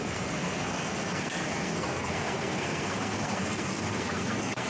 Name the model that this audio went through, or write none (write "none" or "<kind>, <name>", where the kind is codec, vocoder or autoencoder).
codec, SNAC